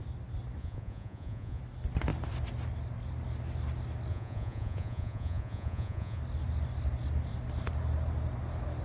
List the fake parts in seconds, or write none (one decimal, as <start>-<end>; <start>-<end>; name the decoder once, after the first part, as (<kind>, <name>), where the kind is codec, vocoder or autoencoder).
0.6-1.6 (vocoder, Vocos); 4.1-6.2